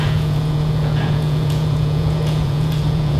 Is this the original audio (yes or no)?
no